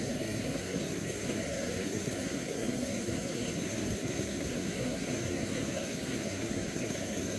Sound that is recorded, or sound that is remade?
remade